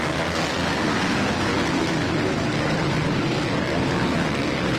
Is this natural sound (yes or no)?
yes